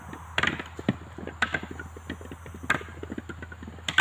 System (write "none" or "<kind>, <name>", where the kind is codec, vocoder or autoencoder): none